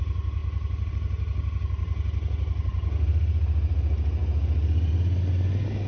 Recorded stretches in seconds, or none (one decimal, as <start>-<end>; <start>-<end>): 0.0-5.9